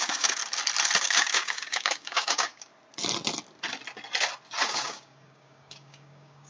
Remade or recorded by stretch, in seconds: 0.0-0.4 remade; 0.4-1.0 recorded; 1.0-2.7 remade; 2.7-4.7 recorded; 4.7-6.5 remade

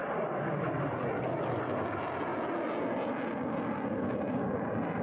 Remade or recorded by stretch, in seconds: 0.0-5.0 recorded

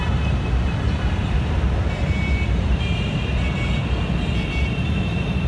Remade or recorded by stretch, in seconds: 0.0-3.3 remade; 3.3-5.5 recorded

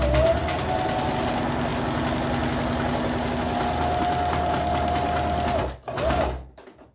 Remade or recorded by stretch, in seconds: 0.0-6.9 recorded

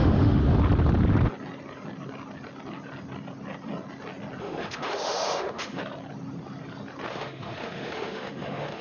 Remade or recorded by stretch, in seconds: 0.0-0.4 remade; 0.4-4.4 recorded; 4.4-5.8 remade; 5.8-7.1 recorded; 7.1-8.8 remade